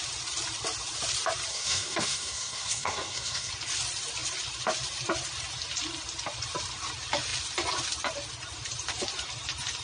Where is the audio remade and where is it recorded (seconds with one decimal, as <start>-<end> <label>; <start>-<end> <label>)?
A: 0.0-1.5 recorded; 1.5-3.5 remade; 3.5-9.8 recorded